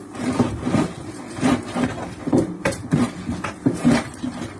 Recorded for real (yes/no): no